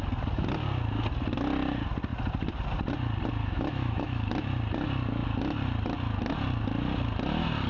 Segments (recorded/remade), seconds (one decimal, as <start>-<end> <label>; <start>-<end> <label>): 0.0-3.4 recorded; 3.4-4.3 remade; 4.3-7.7 recorded